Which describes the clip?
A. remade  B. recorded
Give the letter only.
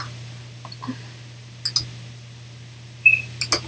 B